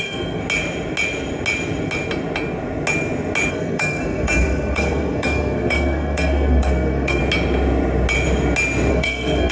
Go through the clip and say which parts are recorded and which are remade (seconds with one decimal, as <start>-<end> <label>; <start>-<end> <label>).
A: 0.0-0.4 remade; 0.4-3.5 recorded; 3.5-7.2 remade; 7.2-8.9 recorded; 8.9-9.5 remade